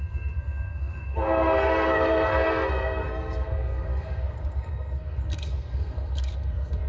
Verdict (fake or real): fake